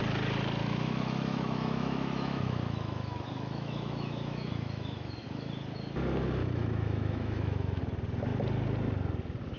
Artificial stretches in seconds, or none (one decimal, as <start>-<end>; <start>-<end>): 0.6-5.5; 6.4-7.8